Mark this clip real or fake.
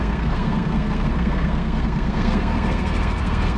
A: fake